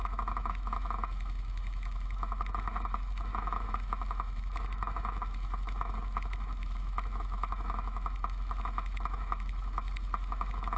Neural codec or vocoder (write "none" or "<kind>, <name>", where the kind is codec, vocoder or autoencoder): autoencoder, DAC-VAE